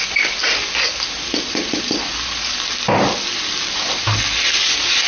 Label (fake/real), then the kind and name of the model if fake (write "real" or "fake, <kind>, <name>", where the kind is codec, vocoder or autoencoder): real